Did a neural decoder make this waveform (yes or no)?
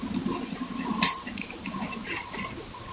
no